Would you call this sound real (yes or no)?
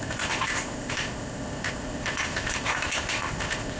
no